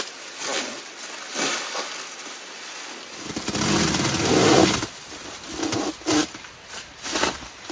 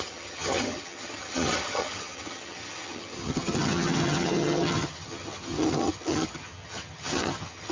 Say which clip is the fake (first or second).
second